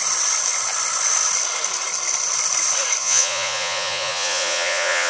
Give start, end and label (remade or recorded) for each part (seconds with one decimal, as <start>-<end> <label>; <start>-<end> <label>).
0.0-3.0 recorded; 3.0-5.1 remade